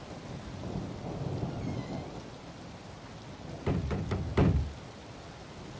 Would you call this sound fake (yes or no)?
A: no